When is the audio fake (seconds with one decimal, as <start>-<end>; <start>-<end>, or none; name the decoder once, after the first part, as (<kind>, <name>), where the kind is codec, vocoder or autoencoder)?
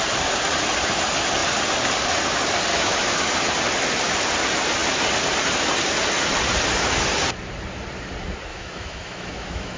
2.7-3.3 (autoencoder, DAC-VAE); 8.5-9.8